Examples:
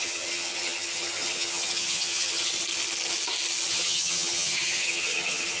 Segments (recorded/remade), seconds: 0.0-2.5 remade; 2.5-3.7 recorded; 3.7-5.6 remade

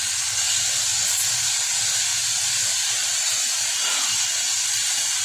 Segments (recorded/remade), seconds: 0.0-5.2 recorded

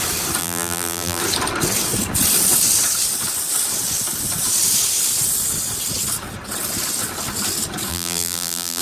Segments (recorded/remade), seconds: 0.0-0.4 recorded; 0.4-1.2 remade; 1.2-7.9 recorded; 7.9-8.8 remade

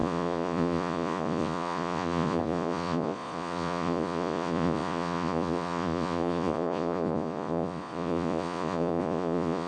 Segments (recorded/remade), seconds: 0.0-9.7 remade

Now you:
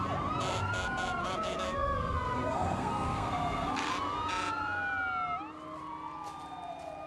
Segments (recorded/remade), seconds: 0.0-1.2 recorded; 1.2-3.9 remade; 3.9-7.1 recorded

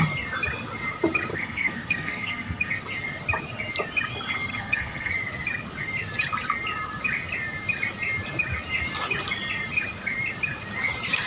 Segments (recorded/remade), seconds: 0.0-1.3 recorded; 1.3-2.7 remade; 2.7-4.5 recorded; 4.5-5.1 remade; 5.1-11.3 recorded